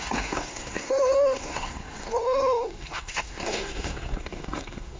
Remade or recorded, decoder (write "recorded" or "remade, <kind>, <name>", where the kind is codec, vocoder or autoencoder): remade, codec, SNAC